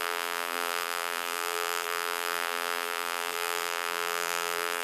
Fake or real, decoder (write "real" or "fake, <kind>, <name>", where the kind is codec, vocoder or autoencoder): fake, vocoder, BigVGAN v2